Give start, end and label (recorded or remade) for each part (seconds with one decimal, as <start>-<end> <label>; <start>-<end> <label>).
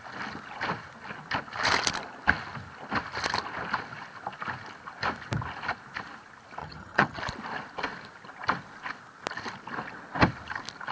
0.0-6.6 recorded; 6.6-7.2 remade; 7.2-10.9 recorded